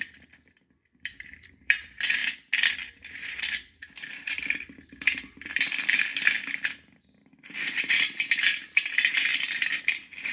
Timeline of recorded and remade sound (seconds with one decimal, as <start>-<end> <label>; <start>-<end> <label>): 0.0-2.2 remade; 2.2-3.4 recorded; 3.4-6.1 remade; 6.1-7.0 recorded; 7.0-10.3 remade